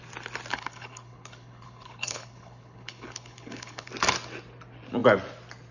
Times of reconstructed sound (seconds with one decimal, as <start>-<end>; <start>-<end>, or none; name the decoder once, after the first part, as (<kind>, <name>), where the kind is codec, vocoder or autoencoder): 0.5-3.9 (codec, HILCodec)